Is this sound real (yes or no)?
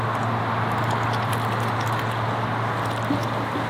yes